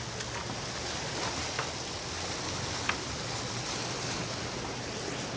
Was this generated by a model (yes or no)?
no